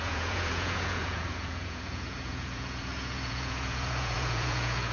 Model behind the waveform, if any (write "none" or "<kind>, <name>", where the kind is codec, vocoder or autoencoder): vocoder, Vocos